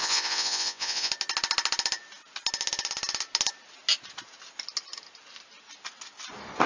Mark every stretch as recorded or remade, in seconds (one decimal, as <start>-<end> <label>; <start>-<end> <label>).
0.0-1.1 remade; 1.1-6.7 recorded

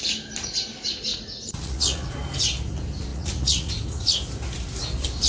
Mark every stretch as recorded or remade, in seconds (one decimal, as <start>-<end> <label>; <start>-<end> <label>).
0.0-1.1 recorded; 1.1-2.1 remade; 2.1-3.1 recorded; 3.1-3.7 remade; 3.7-5.3 recorded

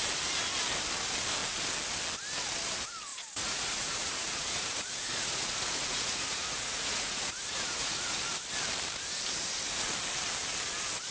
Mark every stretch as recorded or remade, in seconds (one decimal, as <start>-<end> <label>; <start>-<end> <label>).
0.0-3.1 recorded; 3.1-8.2 remade; 8.2-11.1 recorded